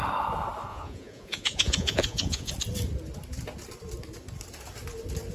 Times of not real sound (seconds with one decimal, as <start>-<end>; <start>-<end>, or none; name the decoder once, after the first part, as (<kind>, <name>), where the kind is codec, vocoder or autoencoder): 0.7-2.5 (vocoder, Vocos)